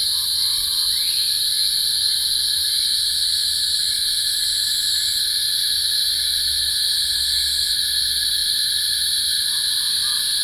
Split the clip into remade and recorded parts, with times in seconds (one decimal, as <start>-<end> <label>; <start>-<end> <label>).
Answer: 0.0-10.4 recorded